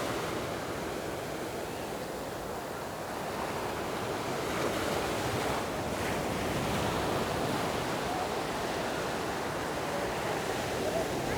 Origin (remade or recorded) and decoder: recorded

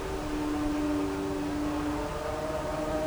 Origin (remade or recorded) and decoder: recorded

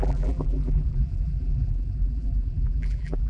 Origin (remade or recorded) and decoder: remade, vocoder, BigVGAN v2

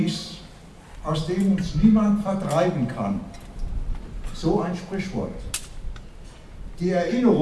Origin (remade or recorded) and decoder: recorded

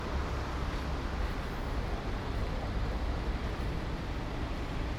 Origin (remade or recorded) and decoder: recorded